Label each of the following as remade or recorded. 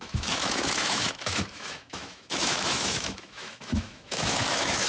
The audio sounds remade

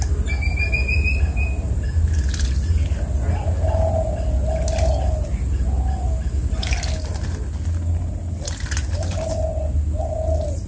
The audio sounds recorded